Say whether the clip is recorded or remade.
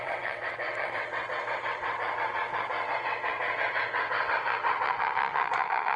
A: remade